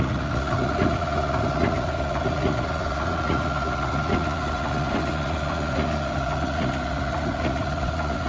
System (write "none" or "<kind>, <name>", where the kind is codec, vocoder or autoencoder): vocoder, Vocos